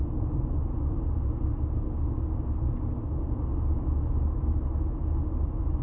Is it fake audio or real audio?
real